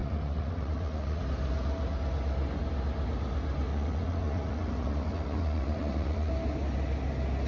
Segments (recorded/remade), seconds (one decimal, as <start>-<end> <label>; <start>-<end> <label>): 0.0-1.2 remade; 1.2-3.7 recorded; 3.7-6.3 remade; 6.3-7.5 recorded